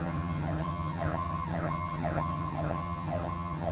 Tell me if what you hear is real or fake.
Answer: fake